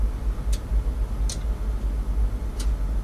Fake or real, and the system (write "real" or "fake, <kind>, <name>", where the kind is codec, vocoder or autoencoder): real